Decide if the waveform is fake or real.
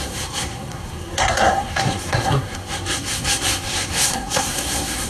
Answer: fake